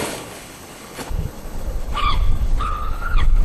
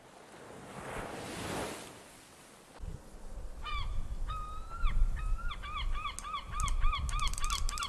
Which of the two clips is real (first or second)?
second